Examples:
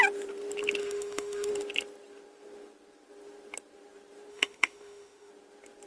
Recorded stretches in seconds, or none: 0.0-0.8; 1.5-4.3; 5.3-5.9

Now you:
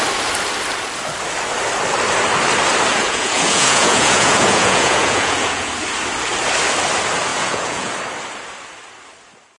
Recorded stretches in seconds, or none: 0.0-2.9; 5.7-7.3; 7.9-9.6

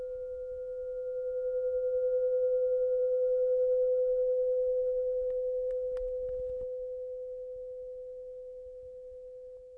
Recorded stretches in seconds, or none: 0.0-3.0; 5.7-9.8

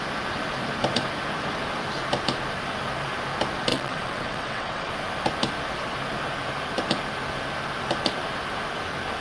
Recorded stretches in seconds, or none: 0.0-3.7; 4.9-9.2

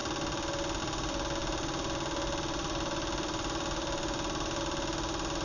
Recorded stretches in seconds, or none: 0.0-5.4